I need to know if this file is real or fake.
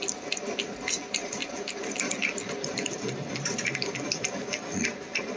real